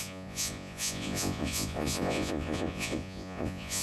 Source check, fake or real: fake